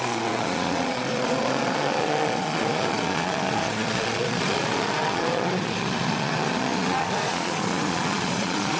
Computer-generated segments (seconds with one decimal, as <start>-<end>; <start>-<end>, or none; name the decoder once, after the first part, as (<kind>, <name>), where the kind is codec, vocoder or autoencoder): 0.0-8.8 (vocoder, Vocos)